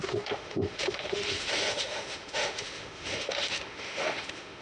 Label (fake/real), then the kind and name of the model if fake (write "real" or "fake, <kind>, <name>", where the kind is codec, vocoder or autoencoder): fake, autoencoder, DAC-VAE